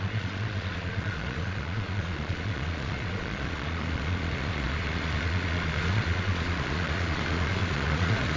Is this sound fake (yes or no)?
yes